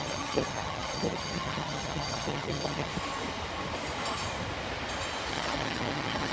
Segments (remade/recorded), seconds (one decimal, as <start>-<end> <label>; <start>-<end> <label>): 0.0-2.9 remade; 2.9-5.3 recorded; 5.3-6.3 remade

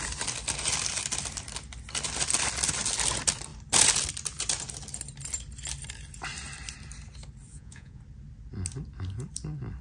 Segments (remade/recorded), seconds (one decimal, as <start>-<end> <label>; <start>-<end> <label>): 0.0-7.5 recorded; 7.5-8.0 remade; 8.0-9.8 recorded

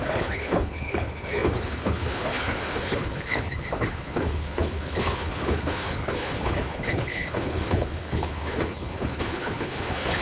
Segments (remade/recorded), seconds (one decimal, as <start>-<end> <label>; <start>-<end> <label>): 0.0-10.2 remade

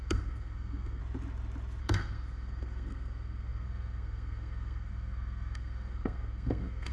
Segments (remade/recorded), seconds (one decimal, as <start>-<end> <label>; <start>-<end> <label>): 0.0-1.0 remade; 1.0-1.8 recorded; 1.8-6.9 remade